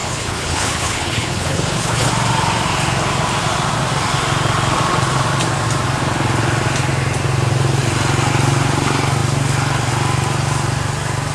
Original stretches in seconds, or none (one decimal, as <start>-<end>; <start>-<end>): 2.1-11.3